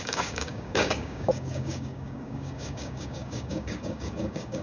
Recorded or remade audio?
remade